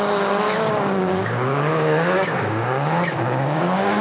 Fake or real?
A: fake